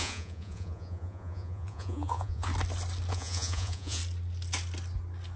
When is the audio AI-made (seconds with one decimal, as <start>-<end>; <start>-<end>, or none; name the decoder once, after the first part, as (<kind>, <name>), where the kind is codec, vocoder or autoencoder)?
0.0-2.5 (vocoder, Vocos); 3.1-4.0